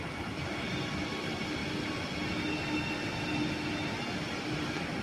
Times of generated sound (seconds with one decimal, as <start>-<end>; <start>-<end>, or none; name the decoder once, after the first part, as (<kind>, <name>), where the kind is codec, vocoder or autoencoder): none